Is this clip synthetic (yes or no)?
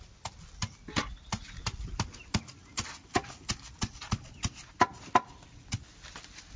no